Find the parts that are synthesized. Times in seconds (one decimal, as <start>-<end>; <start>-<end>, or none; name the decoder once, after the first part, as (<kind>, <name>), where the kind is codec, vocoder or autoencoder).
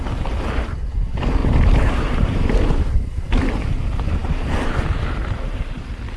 1.4-3.3 (vocoder, BigVGAN v2); 4.2-4.8; 5.2-5.8